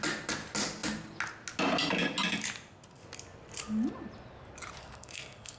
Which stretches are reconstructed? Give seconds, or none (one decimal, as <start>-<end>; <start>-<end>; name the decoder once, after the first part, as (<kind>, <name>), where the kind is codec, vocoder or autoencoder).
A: 4.8-5.6 (codec, SNAC)